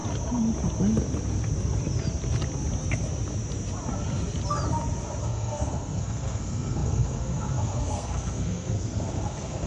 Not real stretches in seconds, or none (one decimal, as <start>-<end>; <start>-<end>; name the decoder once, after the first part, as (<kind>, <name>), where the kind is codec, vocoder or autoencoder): 5.2-9.7 (codec, SNAC)